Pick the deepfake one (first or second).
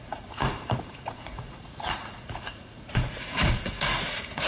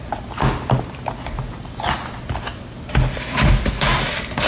first